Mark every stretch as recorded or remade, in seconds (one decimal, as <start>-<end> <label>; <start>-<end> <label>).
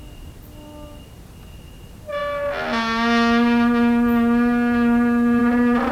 0.0-5.9 recorded